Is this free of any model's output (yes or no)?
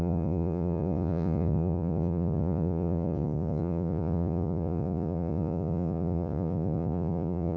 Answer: no